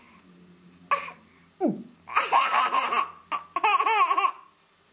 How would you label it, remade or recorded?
recorded